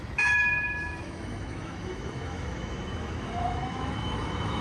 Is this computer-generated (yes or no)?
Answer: yes